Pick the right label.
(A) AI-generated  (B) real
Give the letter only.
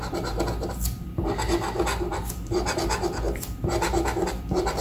B